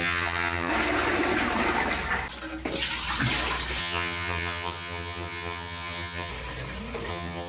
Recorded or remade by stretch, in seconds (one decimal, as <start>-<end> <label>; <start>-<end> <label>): 0.0-0.7 remade; 0.7-3.8 recorded; 3.8-6.3 remade; 6.3-7.1 recorded; 7.1-7.5 remade